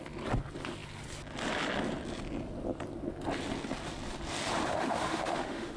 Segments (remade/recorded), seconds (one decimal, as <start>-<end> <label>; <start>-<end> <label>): 0.0-4.7 recorded; 4.7-5.8 remade